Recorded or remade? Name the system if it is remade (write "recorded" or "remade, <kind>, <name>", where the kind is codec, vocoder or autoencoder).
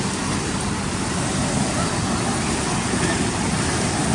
recorded